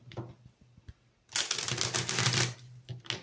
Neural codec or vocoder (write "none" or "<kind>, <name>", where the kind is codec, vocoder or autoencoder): none